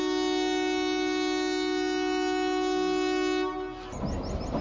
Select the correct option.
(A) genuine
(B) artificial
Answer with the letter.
A